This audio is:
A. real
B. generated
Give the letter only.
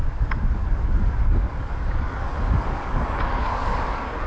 B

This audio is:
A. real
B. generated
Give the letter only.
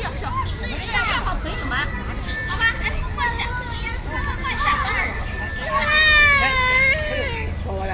A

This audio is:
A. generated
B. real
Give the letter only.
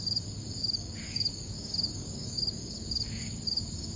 A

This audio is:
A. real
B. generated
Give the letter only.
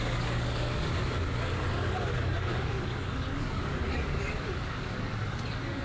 B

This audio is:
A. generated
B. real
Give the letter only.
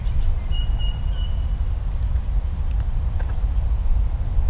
B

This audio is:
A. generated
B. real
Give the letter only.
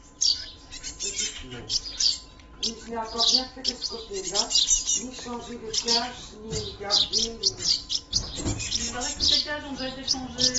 B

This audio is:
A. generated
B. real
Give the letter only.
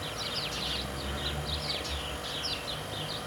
B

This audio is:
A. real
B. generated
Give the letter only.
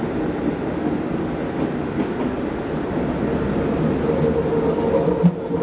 A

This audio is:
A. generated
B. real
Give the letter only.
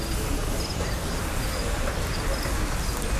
B